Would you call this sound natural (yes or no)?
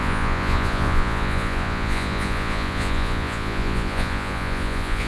no